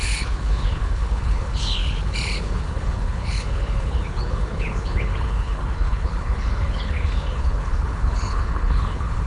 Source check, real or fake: fake